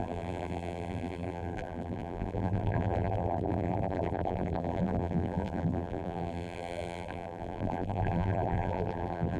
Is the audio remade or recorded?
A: remade